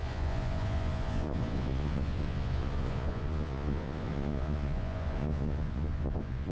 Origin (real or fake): fake